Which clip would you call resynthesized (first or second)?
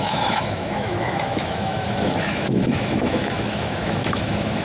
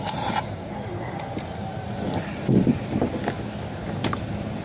first